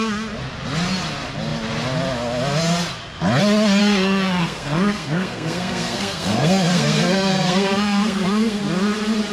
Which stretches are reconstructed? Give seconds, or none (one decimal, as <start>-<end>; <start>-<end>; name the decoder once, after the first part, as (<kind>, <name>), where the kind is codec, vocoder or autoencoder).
3.8-8.6 (codec, SNAC)